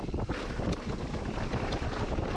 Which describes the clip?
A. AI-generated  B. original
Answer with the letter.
A